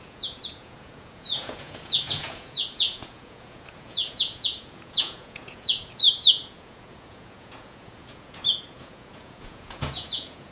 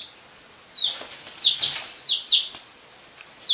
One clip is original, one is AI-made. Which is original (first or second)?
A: second